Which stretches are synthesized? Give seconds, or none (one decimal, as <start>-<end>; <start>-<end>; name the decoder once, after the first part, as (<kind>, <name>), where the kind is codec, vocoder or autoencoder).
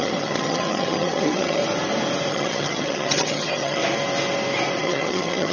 0.0-1.6 (vocoder, HiFi-GAN); 2.3-3.8; 4.8-5.5